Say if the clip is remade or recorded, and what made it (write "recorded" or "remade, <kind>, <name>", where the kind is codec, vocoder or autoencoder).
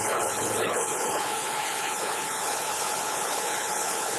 remade, codec, HILCodec